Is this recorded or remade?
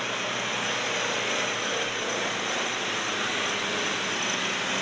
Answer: recorded